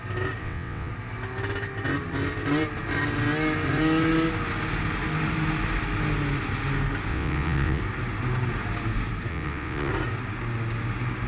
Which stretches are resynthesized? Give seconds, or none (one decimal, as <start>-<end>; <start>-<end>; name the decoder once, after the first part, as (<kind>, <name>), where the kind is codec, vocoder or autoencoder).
0.4-0.9 (vocoder, WaveNeXt); 7.1-7.8; 9.3-9.9